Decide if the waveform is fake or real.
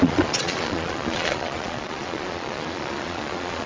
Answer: fake